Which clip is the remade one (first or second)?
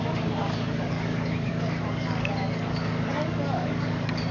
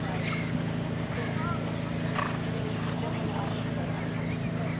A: first